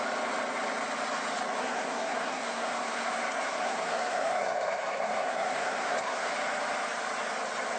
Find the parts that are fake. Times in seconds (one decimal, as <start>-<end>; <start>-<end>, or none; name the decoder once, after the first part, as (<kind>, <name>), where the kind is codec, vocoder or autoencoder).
1.6-6.3 (codec, SNAC)